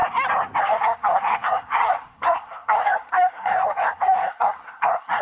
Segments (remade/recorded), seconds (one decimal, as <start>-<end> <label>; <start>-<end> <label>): 0.0-0.6 recorded; 0.6-5.2 remade